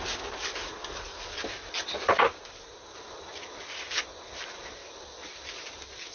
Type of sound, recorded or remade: recorded